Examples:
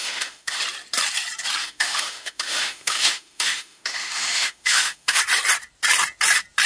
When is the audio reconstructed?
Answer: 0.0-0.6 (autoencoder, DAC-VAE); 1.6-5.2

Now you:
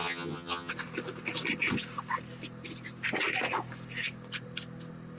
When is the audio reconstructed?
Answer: 0.0-0.7 (vocoder, HiFi-GAN)